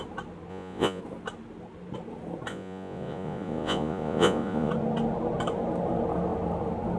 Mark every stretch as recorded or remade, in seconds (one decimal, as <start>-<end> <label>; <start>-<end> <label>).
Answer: 0.0-0.5 recorded; 0.5-1.0 remade; 1.0-2.5 recorded; 2.5-4.7 remade; 4.7-7.0 recorded